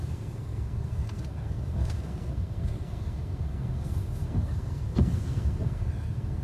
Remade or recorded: remade